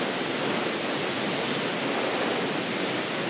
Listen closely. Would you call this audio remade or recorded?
recorded